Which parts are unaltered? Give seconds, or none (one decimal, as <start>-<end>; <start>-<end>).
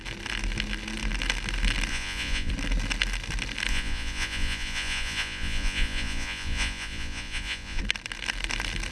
0.0-1.9; 2.5-3.7; 7.8-8.9